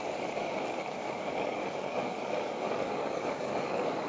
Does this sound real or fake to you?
fake